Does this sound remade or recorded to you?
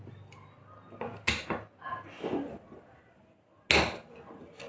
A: recorded